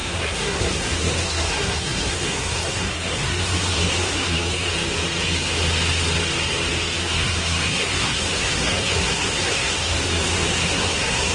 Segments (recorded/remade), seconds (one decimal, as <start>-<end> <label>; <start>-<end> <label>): 0.0-4.7 remade; 4.7-7.0 recorded; 7.0-11.3 remade